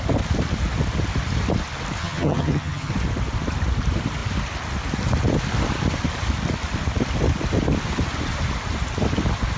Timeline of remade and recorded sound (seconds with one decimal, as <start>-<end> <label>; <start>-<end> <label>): 0.0-2.0 recorded; 2.0-2.9 remade; 2.9-9.6 recorded